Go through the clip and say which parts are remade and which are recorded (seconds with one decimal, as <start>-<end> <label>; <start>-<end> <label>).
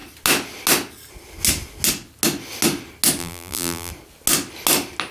0.0-3.2 recorded; 3.2-3.9 remade; 3.9-5.1 recorded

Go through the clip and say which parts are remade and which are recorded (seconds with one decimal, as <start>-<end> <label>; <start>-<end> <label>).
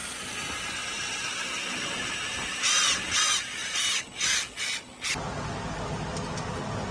0.0-6.9 recorded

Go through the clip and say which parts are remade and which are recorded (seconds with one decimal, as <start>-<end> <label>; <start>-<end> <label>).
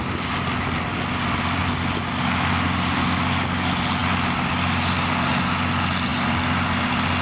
0.0-7.2 recorded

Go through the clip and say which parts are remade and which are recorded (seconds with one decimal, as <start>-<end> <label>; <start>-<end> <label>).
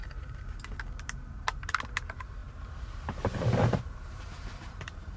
0.0-2.4 recorded; 2.4-5.2 remade